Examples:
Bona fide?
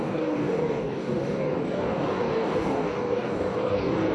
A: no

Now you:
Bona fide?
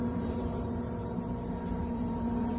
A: no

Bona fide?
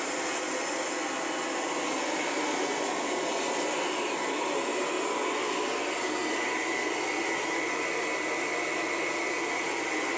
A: yes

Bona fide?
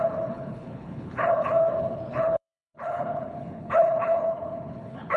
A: no